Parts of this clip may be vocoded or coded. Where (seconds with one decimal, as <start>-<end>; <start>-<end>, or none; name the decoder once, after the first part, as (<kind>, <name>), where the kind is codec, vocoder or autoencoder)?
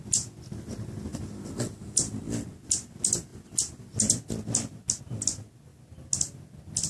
1.1-2.5 (vocoder, BigVGAN v2)